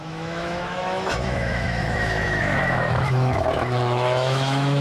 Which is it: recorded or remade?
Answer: remade